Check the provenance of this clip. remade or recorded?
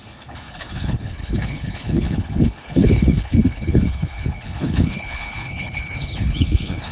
remade